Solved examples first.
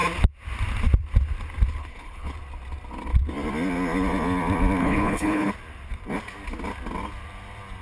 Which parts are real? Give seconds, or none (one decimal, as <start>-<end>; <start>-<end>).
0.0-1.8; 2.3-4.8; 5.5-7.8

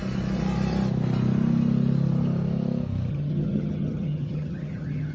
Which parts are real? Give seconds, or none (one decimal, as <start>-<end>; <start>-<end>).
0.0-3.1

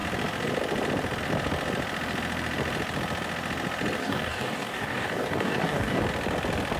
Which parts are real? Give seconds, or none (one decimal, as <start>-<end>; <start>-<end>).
0.0-4.0; 6.0-6.8

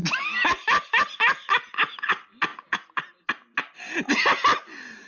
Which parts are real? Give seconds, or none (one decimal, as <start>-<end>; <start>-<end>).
0.0-5.1

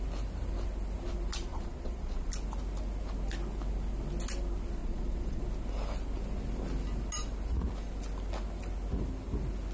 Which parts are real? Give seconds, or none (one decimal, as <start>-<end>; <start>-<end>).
0.0-1.5; 2.3-4.8; 5.4-9.7